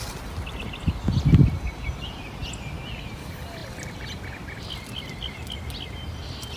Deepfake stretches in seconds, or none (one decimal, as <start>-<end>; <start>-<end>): none